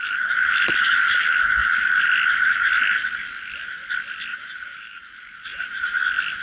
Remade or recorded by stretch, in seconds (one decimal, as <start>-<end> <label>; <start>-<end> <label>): 0.0-4.3 recorded; 4.3-5.0 remade; 5.0-5.5 recorded; 5.5-6.0 remade; 6.0-6.4 recorded